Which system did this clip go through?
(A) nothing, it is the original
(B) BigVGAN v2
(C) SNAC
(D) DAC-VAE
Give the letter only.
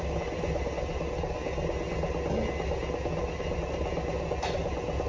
A